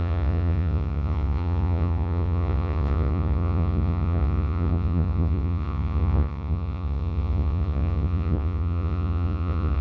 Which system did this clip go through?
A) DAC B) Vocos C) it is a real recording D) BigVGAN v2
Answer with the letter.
B